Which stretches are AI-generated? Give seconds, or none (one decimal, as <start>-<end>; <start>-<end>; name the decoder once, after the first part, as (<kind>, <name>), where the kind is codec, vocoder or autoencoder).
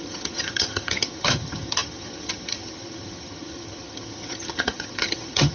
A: 0.0-5.5 (vocoder, HiFi-GAN)